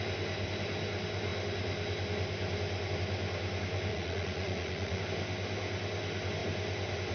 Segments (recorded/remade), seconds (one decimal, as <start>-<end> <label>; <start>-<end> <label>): 0.0-3.9 recorded; 3.9-5.0 remade; 5.0-7.1 recorded